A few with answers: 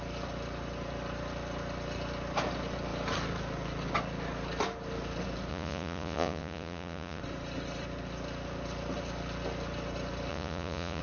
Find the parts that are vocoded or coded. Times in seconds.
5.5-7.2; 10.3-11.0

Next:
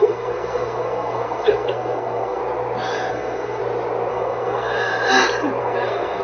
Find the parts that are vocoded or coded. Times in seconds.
0.0-2.4; 3.1-3.6; 4.1-4.9; 5.6-6.2

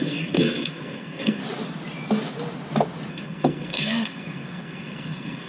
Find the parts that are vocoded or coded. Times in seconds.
0.0-1.4; 3.1-5.5

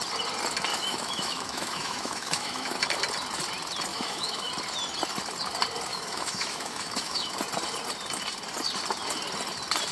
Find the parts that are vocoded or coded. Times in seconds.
0.7-2.8; 3.9-4.5; 5.9-7.3